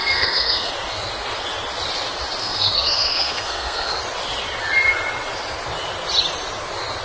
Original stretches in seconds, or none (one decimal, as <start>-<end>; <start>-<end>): 0.7-2.4; 4.0-7.0